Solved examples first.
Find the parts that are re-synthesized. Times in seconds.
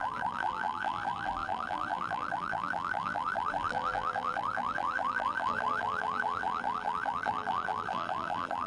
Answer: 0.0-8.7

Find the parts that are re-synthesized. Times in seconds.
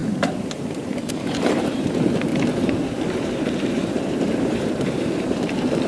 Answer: 0.0-2.3; 3.7-5.9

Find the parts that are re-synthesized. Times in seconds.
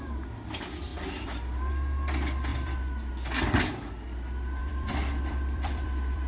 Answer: 2.5-3.1; 4.6-6.3